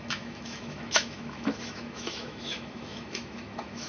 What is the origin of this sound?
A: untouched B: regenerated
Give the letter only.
B